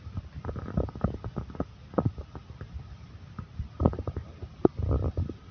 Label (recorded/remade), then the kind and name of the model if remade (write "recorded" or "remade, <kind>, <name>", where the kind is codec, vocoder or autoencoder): recorded